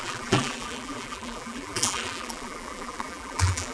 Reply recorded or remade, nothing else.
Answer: remade